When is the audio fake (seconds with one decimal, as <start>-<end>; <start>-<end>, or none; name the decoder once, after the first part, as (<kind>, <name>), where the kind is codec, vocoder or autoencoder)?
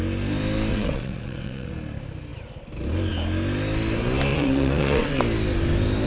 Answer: 0.7-1.7 (vocoder, WaveNeXt); 4.3-5.2